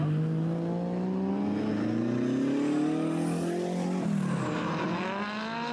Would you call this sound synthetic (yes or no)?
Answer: no